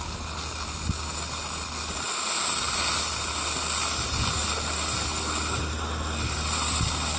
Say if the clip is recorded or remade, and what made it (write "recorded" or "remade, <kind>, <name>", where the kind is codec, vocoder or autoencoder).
recorded